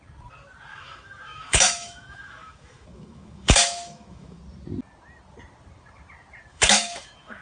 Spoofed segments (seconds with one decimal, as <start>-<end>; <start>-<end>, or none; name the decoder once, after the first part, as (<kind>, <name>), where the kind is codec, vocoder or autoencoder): 0.7-4.4 (autoencoder, DAC-VAE); 6.5-7.4